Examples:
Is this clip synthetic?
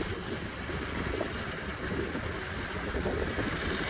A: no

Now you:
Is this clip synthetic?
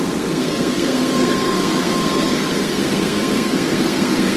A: yes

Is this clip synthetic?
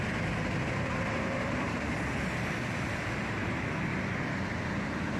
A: no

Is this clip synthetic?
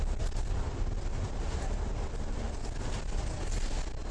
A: no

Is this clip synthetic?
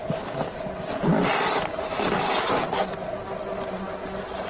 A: no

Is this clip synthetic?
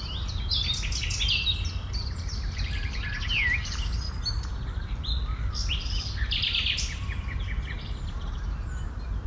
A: no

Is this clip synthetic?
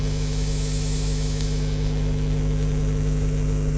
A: yes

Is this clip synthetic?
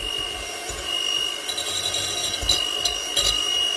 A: no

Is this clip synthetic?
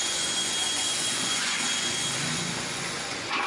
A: yes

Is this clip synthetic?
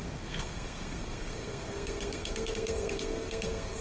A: yes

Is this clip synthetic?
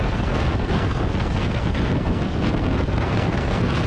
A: yes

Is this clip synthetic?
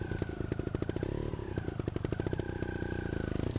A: no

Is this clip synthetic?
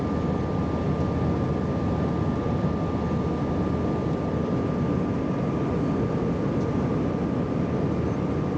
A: no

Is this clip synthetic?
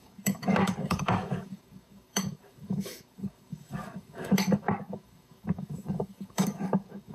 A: yes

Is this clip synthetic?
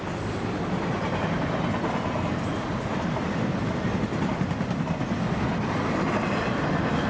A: no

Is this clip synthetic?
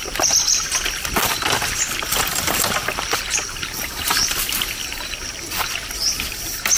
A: no